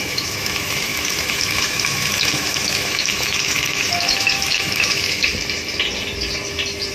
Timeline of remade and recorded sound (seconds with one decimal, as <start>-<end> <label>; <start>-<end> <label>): 0.0-5.3 remade; 5.3-6.9 recorded